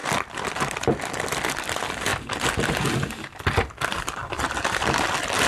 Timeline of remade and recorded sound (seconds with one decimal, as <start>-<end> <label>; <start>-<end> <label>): 0.0-1.3 remade; 1.3-2.1 recorded; 2.1-2.8 remade; 2.8-4.2 recorded; 4.2-5.5 remade